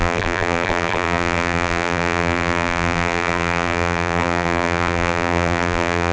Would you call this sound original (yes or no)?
no